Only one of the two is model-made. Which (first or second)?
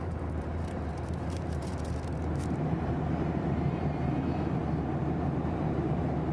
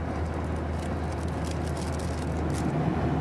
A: first